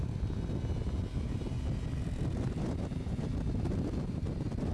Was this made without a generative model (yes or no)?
yes